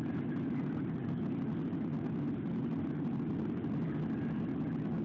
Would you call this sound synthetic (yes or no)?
no